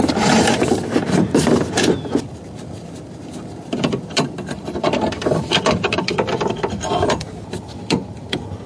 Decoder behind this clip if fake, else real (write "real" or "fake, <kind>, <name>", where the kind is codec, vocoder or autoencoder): fake, vocoder, BigVGAN v2